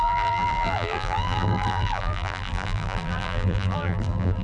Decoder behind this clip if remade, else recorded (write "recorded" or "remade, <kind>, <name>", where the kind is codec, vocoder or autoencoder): remade, vocoder, BigVGAN v2